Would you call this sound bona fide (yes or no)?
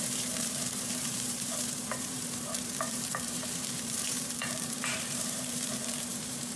no